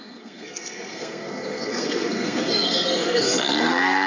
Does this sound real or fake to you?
fake